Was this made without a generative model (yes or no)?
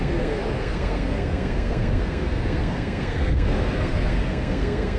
no